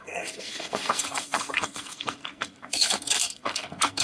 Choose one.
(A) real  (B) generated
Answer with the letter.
B